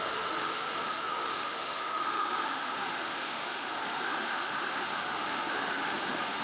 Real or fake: fake